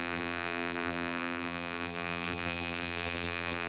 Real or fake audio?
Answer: fake